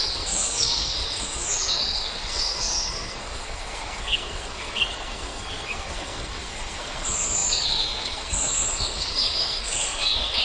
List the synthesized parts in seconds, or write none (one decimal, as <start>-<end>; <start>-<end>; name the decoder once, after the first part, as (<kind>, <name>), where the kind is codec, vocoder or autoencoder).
0.0-10.4 (codec, SNAC)

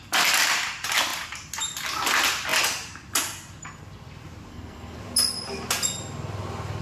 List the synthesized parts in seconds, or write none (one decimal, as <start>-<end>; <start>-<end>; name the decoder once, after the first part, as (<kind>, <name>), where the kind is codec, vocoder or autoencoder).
4.5-5.0 (codec, SNAC)